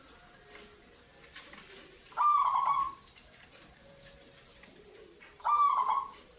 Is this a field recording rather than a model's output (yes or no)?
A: yes